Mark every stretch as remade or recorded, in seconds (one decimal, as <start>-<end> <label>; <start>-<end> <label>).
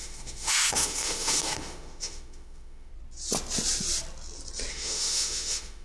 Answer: 0.0-2.9 remade; 2.9-4.7 recorded; 4.7-5.8 remade